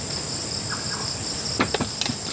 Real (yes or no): yes